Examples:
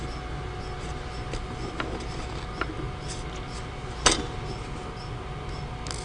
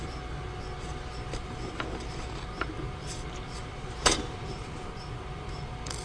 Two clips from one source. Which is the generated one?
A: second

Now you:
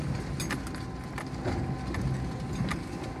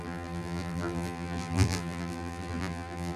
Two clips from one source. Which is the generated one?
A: second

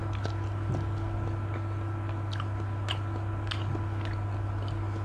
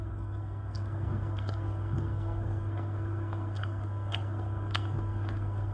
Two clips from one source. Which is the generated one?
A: second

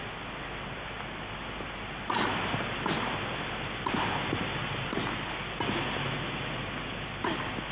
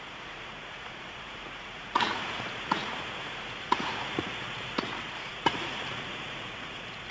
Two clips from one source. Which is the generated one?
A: second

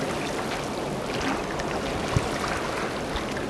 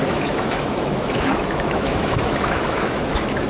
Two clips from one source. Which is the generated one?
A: second